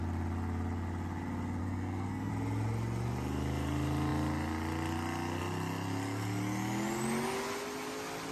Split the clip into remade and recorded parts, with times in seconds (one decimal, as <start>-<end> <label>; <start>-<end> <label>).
0.0-1.6 recorded; 1.6-2.3 remade; 2.3-8.3 recorded